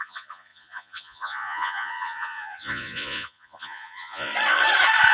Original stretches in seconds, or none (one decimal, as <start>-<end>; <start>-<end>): 4.3-5.1